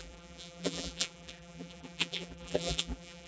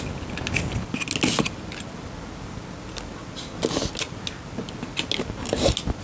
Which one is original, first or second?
second